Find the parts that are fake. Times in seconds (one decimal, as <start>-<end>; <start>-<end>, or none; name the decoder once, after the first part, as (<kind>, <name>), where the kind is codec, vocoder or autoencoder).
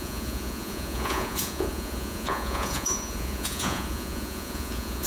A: 0.0-5.1 (vocoder, Vocos)